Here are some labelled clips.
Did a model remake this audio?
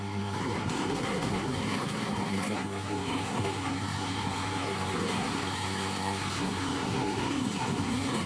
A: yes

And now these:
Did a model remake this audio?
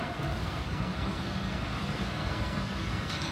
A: yes